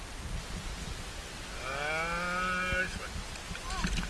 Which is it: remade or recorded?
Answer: recorded